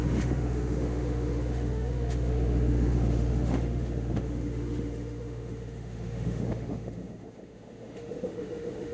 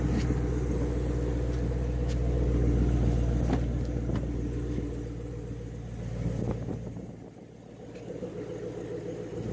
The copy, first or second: first